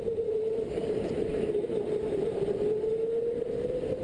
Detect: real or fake real